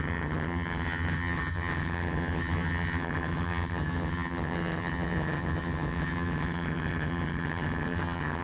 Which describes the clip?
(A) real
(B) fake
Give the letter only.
B